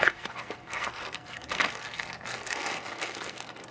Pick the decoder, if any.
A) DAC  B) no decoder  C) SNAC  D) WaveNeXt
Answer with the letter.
C